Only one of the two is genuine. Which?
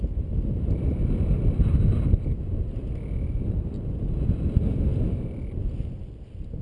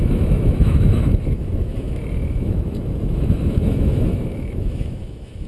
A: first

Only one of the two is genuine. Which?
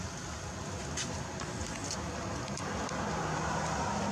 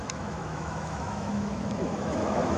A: first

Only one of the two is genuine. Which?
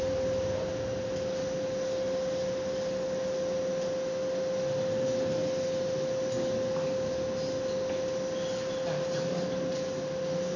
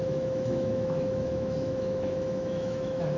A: first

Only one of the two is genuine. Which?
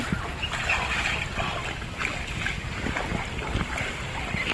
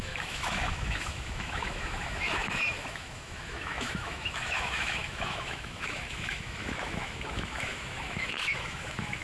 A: first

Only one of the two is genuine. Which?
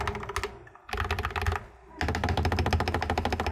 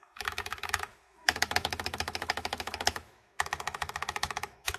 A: first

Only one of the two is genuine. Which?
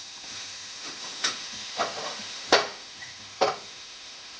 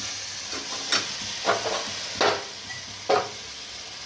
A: second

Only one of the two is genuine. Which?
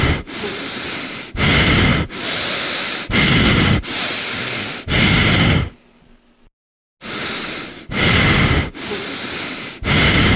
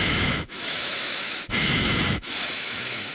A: first